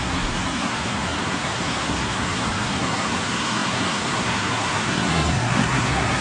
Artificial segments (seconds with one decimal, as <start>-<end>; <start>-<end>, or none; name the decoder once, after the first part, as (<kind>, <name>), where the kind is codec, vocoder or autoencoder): 0.0-6.2 (codec, SNAC)